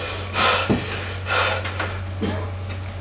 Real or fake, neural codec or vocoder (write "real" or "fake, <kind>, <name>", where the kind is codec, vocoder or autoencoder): real